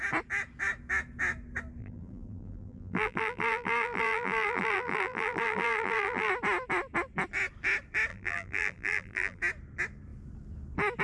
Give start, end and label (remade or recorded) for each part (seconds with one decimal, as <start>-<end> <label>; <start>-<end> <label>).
0.0-1.8 recorded; 1.8-6.3 remade; 6.3-8.1 recorded; 8.1-9.4 remade; 9.4-11.0 recorded